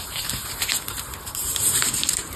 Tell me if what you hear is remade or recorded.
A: remade